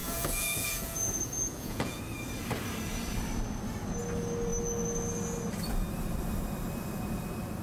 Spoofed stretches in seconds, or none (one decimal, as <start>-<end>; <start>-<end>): 0.0-2.0